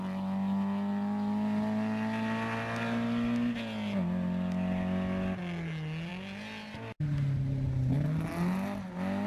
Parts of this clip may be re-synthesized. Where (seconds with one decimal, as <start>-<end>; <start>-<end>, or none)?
none